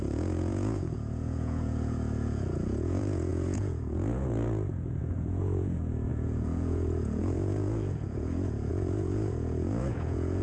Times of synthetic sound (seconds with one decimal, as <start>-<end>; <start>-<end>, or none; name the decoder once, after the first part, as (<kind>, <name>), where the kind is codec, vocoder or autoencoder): 0.0-10.4 (vocoder, Vocos)